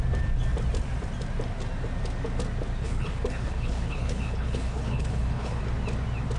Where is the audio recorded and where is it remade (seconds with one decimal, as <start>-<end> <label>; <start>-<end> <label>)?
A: 0.0-2.8 recorded; 2.8-5.6 remade; 5.6-6.4 recorded